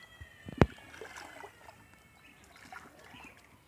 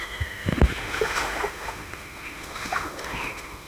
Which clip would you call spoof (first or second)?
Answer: second